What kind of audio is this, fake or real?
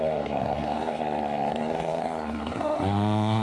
fake